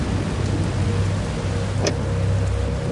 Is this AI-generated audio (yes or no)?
no